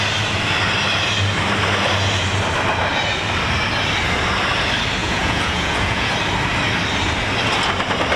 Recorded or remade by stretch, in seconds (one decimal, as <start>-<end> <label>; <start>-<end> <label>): 0.0-5.0 recorded; 5.0-6.1 remade; 6.1-8.2 recorded